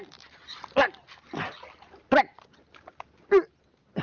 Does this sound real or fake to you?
real